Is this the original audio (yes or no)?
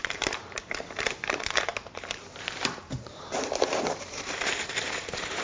no